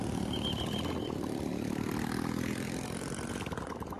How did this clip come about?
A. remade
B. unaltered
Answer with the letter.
B